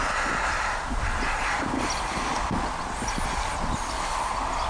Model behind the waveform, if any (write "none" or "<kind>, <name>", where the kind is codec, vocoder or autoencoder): none